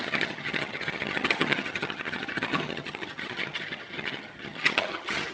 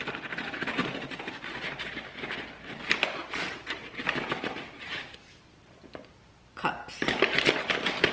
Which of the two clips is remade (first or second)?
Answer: first